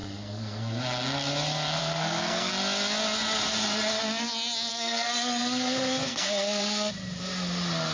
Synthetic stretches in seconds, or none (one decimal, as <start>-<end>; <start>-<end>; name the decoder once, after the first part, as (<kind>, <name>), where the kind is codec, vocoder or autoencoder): 0.0-0.8 (codec, SNAC); 1.8-2.5; 4.7-6.9